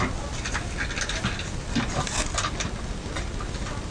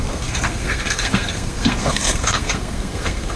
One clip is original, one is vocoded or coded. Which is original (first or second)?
first